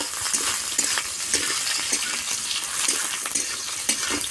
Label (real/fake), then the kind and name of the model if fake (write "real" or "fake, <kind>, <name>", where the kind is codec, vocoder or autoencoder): real